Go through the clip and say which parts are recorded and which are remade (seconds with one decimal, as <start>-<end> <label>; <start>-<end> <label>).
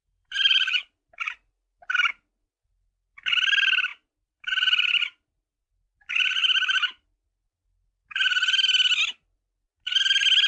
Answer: 0.0-1.2 remade; 1.2-3.9 recorded; 3.9-5.7 remade; 5.7-10.5 recorded